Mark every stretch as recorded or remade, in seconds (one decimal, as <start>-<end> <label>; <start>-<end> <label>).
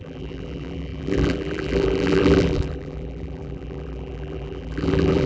0.0-5.3 remade